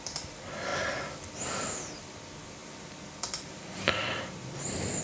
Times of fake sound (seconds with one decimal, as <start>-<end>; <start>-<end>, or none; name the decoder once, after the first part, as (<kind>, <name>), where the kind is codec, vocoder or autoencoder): 2.6-5.0 (vocoder, BigVGAN v2)